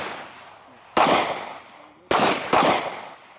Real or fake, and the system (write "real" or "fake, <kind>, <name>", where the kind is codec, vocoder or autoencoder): real